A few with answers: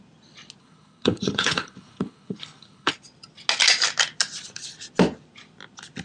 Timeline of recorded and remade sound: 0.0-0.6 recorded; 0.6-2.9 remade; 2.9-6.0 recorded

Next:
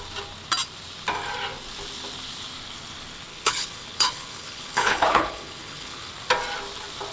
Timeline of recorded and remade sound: 0.0-3.3 recorded; 3.3-6.1 remade; 6.1-7.1 recorded

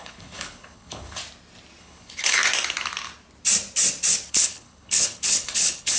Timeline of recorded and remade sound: 0.0-1.2 remade; 1.2-1.8 recorded; 1.8-2.4 remade; 2.4-4.3 recorded; 4.3-6.0 remade

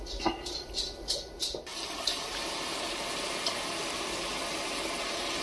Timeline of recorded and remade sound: 0.0-5.4 recorded